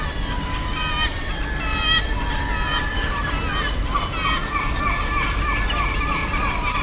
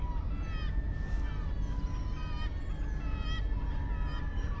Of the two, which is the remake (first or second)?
first